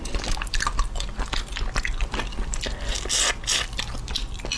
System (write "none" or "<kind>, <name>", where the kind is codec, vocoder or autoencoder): none